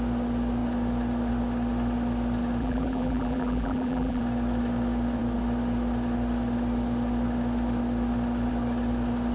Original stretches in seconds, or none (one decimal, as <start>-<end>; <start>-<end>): 0.0-2.6; 4.2-9.3